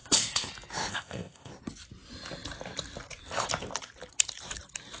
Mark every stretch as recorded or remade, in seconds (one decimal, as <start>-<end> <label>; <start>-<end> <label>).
0.0-0.5 remade; 0.5-0.9 recorded; 0.9-1.5 remade; 1.5-5.0 recorded